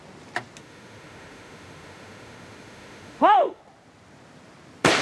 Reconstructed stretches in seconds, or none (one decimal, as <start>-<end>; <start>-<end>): 0.6-3.6